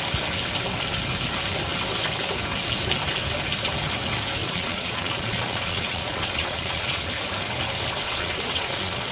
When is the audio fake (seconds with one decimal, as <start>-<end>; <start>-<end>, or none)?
4.4-7.1; 8.0-9.1

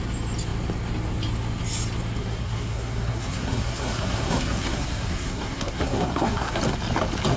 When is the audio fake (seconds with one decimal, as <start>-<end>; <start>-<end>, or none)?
2.2-6.6

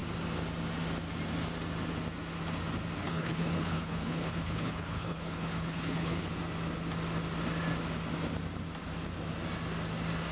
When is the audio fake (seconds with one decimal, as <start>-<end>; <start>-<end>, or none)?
3.0-6.3

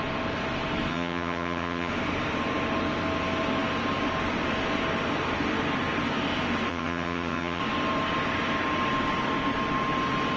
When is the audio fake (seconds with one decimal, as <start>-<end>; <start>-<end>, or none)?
0.9-1.9; 6.7-7.6

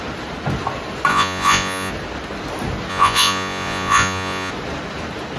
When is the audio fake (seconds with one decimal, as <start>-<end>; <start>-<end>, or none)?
1.1-1.9; 2.9-4.5